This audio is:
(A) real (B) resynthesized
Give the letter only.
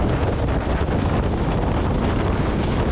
A